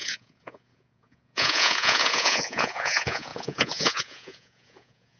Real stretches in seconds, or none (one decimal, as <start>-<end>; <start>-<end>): none